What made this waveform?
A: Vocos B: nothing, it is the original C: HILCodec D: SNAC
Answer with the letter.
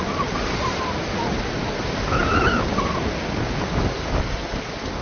B